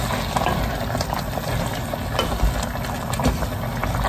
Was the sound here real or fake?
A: real